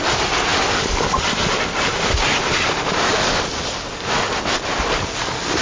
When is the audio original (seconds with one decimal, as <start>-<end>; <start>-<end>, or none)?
0.0-5.6